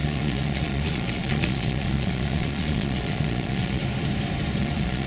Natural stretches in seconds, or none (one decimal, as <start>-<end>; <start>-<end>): 3.8-4.6